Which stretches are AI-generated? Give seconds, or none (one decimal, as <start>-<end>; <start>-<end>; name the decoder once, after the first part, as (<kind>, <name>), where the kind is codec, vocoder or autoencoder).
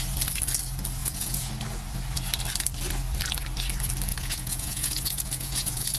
1.0-1.5 (vocoder, Vocos); 4.1-6.0